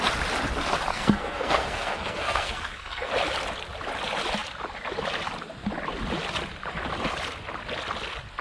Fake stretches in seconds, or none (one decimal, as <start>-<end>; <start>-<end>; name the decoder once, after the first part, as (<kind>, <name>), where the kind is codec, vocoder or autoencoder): 0.9-3.1 (codec, SNAC)